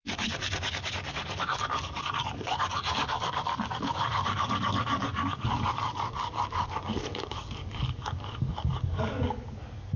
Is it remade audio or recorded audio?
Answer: remade